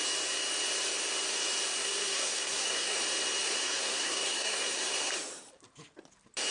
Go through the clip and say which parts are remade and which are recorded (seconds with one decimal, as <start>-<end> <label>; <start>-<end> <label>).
0.0-1.8 recorded; 1.8-3.0 remade; 3.0-3.4 recorded; 3.4-5.1 remade; 5.1-6.5 recorded

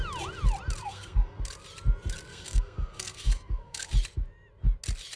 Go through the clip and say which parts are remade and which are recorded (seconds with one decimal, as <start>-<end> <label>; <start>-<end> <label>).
0.0-0.8 recorded; 0.8-1.4 remade; 1.4-2.3 recorded; 2.3-3.9 remade; 3.9-5.2 recorded

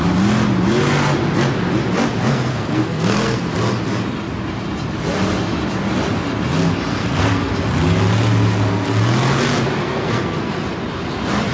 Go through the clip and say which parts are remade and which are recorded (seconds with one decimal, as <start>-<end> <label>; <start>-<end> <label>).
0.0-2.2 recorded; 2.2-3.5 remade; 3.5-6.9 recorded; 6.9-7.5 remade; 7.5-9.8 recorded; 9.8-10.5 remade; 10.5-11.5 recorded